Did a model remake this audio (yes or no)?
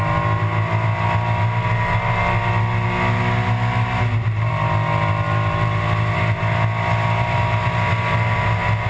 no